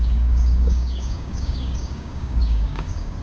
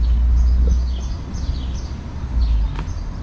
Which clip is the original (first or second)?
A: second